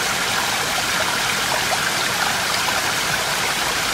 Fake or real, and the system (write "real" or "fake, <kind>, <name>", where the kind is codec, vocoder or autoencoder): fake, vocoder, BigVGAN v2